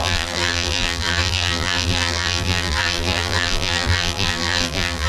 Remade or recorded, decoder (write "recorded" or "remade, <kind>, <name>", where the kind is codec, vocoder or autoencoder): remade, vocoder, BigVGAN v2